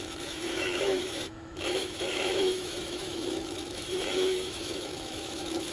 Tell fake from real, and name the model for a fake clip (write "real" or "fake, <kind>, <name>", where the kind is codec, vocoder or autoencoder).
fake, autoencoder, DAC-VAE